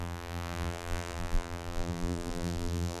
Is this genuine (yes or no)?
no